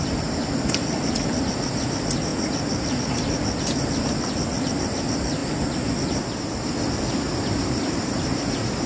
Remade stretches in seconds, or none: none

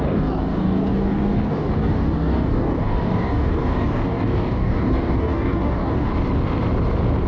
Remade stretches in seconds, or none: 0.0-6.1 (codec, DAC)